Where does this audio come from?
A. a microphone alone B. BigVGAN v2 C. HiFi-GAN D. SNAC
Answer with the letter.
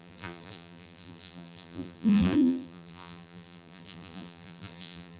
B